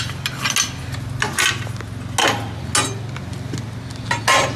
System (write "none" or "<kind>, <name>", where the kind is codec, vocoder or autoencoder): none